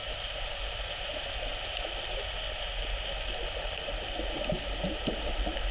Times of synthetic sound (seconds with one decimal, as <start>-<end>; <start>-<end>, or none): none